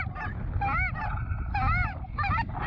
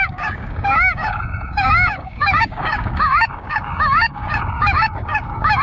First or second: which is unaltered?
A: first